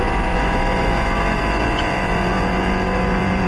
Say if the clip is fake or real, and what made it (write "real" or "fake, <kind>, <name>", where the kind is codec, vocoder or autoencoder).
fake, vocoder, Vocos